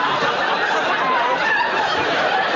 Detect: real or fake real